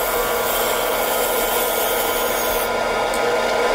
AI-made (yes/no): no